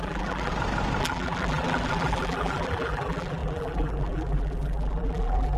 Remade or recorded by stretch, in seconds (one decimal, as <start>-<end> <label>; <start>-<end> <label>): 0.0-0.5 remade; 0.5-1.0 recorded; 1.0-5.6 remade